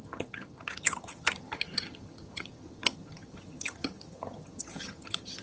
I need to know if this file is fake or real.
fake